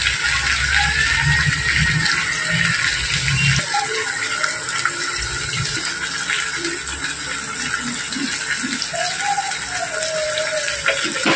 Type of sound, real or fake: real